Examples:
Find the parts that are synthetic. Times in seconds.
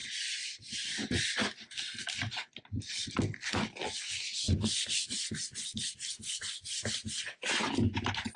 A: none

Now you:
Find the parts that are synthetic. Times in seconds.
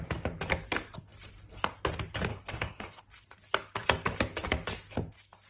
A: 2.3-3.0 (codec, HILCodec)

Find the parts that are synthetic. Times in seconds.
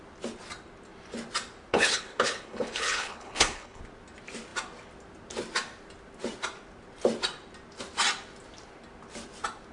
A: 1.7-3.8 (codec, HILCodec)